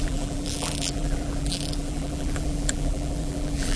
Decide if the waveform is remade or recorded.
remade